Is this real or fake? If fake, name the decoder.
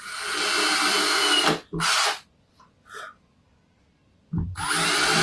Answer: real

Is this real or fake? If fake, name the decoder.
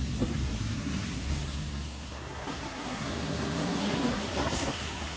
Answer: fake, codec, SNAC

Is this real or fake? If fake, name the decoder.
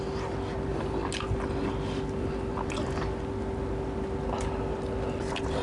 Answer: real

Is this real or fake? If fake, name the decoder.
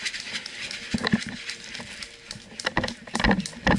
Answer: real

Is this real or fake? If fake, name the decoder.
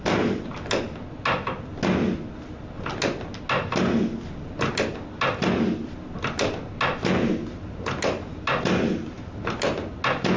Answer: real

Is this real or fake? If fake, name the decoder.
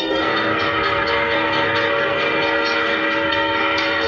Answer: fake, codec, SNAC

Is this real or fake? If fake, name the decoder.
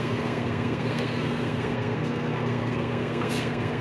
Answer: fake, codec, SNAC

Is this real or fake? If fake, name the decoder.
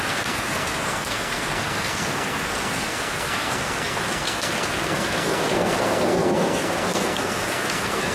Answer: fake, codec, SNAC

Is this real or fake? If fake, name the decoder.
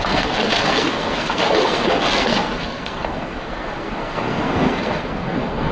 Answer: fake, codec, SNAC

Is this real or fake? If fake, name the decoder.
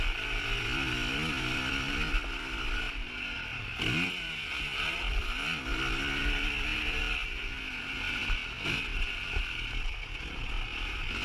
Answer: real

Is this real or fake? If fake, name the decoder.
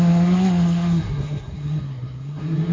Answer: fake, codec, SNAC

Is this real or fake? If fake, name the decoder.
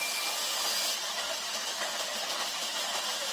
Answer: real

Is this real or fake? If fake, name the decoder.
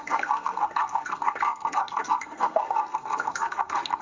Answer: fake, codec, SNAC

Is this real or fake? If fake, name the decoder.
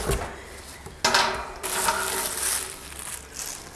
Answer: real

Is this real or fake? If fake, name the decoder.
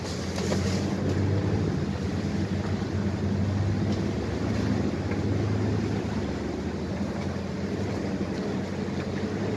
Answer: real